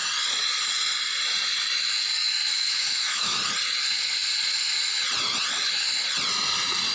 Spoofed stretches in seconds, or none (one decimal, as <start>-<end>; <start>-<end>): 2.5-3.4